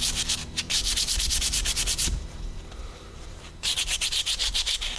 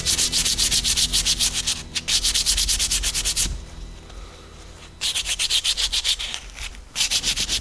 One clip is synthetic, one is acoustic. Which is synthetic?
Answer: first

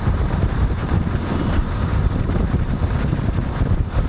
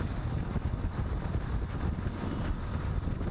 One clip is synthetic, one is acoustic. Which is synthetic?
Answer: first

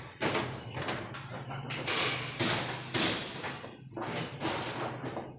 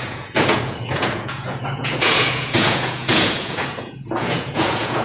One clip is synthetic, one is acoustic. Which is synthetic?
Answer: second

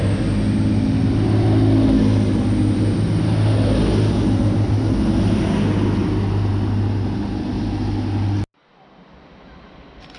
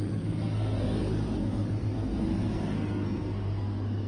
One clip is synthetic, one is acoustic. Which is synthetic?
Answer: second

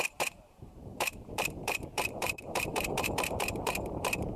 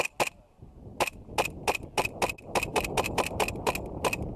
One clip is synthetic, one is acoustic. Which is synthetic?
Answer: first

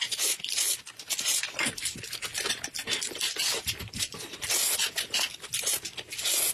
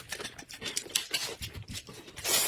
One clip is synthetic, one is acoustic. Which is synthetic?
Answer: second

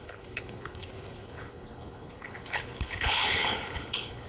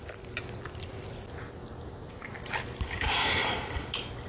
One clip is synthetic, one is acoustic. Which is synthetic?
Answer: first